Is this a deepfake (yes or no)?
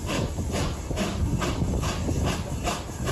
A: no